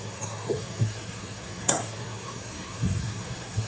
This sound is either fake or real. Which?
fake